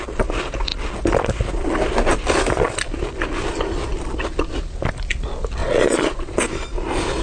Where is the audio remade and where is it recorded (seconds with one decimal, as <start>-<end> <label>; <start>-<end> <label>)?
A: 0.0-5.6 recorded; 5.6-6.4 remade; 6.4-7.2 recorded